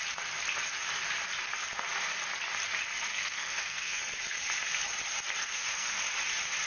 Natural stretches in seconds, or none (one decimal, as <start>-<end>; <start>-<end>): 0.0-3.1; 4.0-5.4; 6.0-6.7